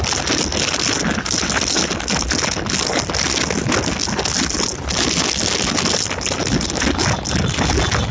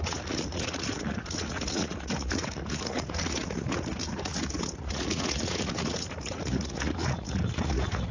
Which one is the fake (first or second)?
second